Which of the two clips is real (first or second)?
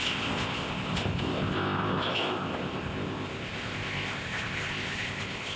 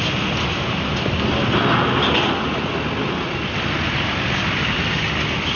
second